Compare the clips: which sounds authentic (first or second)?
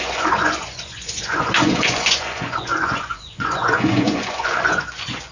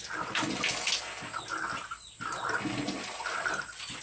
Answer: second